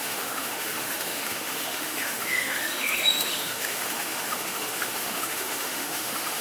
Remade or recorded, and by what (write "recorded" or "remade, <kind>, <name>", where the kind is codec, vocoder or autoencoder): remade, autoencoder, DAC-VAE